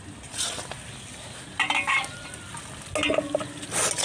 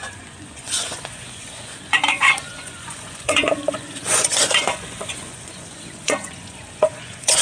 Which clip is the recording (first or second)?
first